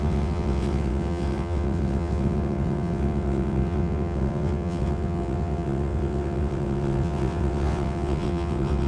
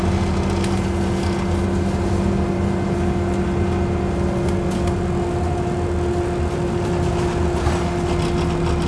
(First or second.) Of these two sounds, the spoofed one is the first